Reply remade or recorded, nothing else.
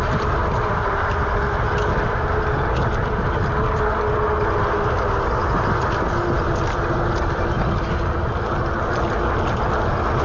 recorded